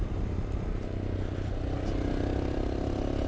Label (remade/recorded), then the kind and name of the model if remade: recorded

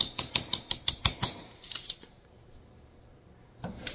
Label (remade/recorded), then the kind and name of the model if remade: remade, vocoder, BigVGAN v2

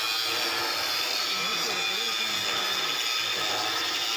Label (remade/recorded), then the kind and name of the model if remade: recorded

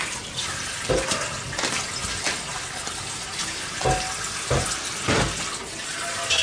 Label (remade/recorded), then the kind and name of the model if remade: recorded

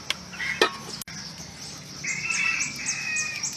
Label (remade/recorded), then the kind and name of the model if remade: recorded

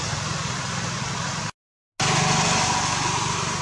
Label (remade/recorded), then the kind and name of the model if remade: recorded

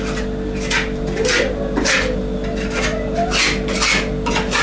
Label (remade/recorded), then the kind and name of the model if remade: recorded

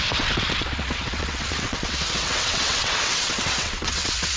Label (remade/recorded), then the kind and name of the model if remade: remade, vocoder, WaveNeXt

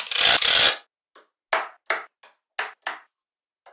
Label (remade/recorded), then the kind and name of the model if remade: recorded